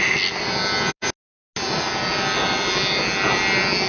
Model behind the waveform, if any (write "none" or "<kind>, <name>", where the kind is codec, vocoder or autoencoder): none